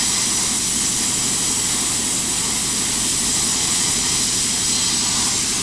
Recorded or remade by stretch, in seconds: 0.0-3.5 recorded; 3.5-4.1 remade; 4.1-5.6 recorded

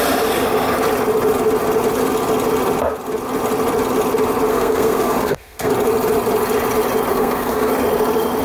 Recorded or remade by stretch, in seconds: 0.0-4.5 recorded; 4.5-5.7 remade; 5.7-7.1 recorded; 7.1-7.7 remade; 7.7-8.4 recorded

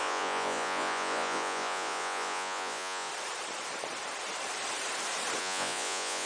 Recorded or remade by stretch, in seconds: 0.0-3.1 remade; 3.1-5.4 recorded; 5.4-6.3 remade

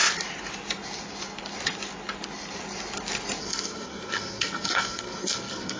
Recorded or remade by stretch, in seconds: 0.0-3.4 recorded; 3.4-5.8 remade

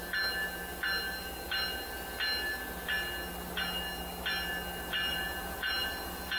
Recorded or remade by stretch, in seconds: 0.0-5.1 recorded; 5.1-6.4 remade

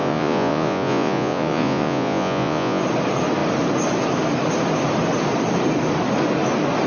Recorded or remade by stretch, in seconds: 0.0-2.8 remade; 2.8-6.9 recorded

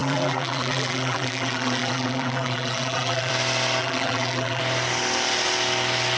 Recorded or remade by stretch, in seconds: 0.0-3.3 remade; 3.3-3.8 recorded; 3.8-4.6 remade; 4.6-6.2 recorded

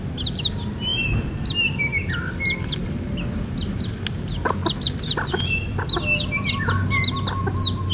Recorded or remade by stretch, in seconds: 0.0-7.9 recorded